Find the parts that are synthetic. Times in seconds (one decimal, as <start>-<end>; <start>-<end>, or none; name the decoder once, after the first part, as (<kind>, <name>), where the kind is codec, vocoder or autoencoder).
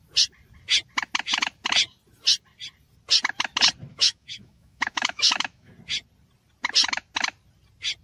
3.9-5.7 (autoencoder, DAC-VAE)